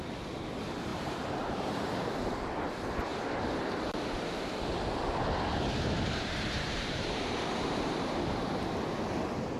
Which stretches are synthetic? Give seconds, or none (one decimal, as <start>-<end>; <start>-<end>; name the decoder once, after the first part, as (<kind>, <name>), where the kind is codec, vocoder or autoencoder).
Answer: 0.9-2.1 (vocoder, BigVGAN v2); 5.5-8.2